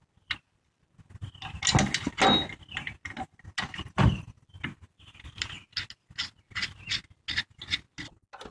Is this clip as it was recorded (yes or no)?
yes